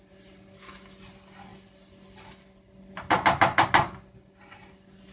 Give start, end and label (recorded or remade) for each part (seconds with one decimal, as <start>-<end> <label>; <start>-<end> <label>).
0.0-5.1 recorded